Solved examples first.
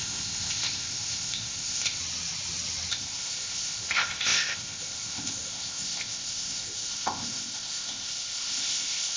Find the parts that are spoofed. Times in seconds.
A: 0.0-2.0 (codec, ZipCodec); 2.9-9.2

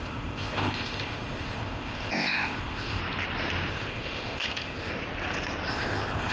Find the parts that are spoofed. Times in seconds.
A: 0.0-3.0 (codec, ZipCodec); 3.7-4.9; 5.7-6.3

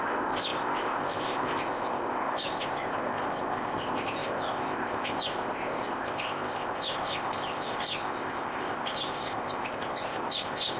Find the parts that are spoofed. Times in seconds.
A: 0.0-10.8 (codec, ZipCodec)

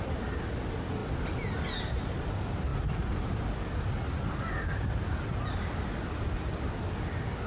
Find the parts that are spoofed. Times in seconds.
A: none